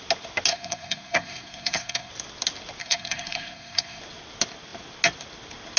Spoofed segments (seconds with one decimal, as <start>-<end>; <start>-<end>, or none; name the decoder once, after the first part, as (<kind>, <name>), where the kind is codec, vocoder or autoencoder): 0.5-2.1 (codec, SNAC); 2.8-4.0